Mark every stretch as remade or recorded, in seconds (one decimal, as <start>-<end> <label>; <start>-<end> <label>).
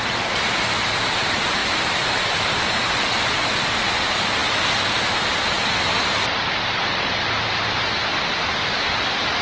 0.0-1.6 recorded; 1.6-2.9 remade; 2.9-9.4 recorded